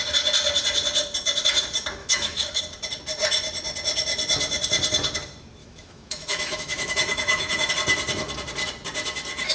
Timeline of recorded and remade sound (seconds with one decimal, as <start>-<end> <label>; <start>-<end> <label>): 0.0-2.0 recorded; 2.0-2.6 remade; 2.6-5.6 recorded; 5.6-7.7 remade; 7.7-9.5 recorded